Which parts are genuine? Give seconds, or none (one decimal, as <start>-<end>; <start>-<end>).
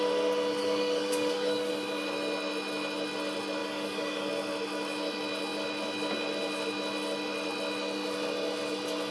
0.0-0.6; 1.7-3.6; 4.3-9.1